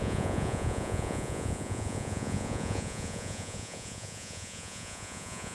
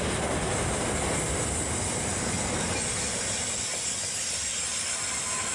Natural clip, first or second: second